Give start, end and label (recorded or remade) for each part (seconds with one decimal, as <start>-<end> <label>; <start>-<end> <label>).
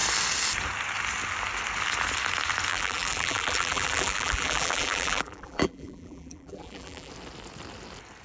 0.0-2.7 recorded; 2.7-7.1 remade; 7.1-8.2 recorded